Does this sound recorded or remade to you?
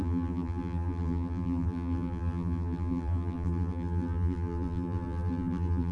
remade